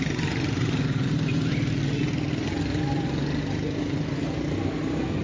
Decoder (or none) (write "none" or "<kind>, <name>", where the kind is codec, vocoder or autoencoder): none